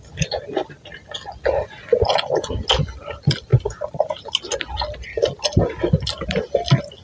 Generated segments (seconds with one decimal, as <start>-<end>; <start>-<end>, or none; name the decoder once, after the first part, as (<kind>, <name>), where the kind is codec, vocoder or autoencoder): none